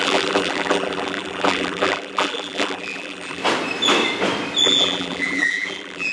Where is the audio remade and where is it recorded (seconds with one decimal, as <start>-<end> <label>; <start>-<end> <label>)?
0.0-3.4 remade; 3.4-4.6 recorded; 4.6-6.1 remade